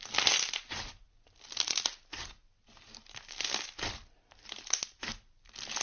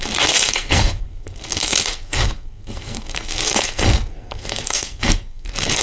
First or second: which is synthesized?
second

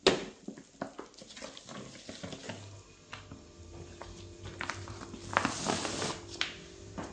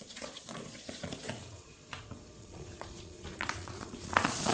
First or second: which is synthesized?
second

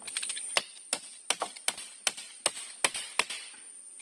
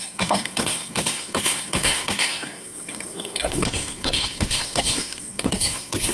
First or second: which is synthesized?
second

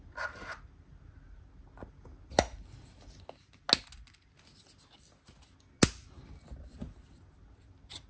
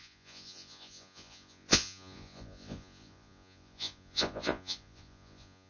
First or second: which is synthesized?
second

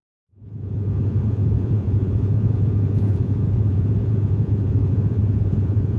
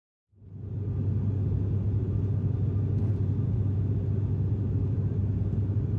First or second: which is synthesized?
first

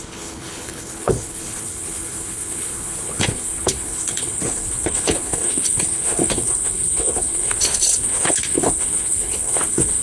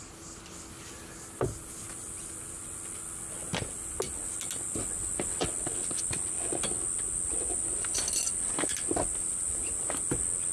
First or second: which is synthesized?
first